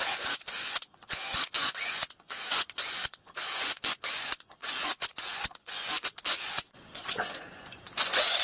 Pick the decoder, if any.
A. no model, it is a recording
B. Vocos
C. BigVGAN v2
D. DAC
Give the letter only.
B